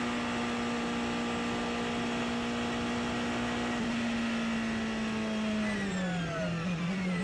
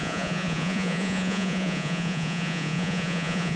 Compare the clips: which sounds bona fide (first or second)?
first